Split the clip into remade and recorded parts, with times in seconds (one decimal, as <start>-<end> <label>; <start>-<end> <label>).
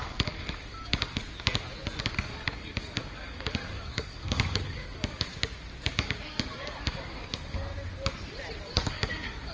0.0-1.2 remade; 1.2-2.0 recorded; 2.0-5.3 remade; 5.3-5.9 recorded; 5.9-7.7 remade; 7.7-8.9 recorded; 8.9-9.5 remade